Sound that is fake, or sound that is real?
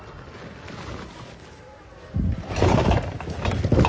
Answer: real